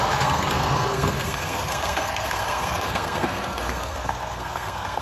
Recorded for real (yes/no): no